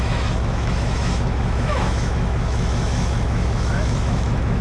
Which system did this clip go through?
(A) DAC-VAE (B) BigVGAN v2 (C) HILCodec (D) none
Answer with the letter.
A